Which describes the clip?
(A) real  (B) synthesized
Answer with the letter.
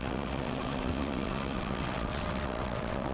B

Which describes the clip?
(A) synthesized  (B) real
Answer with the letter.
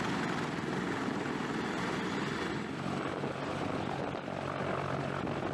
B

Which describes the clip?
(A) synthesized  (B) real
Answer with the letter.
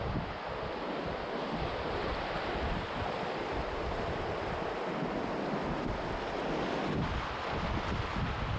B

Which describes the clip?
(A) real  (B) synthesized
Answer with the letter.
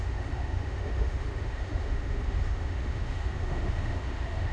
B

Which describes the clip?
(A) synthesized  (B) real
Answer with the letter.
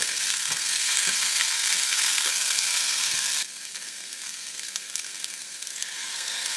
A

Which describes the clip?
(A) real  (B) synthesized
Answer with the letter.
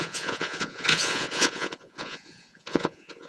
B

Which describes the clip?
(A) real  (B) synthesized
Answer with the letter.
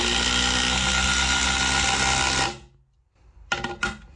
A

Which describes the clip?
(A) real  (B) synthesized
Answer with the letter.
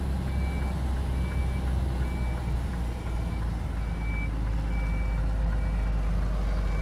A